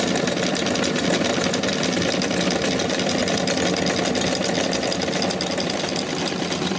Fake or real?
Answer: real